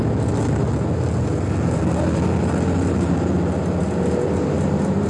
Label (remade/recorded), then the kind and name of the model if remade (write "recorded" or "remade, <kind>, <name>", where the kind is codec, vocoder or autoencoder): recorded